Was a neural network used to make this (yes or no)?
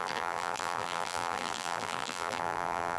yes